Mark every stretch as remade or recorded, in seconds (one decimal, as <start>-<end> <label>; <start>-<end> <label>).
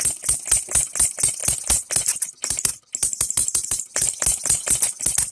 0.0-3.4 recorded; 3.4-4.7 remade; 4.7-5.3 recorded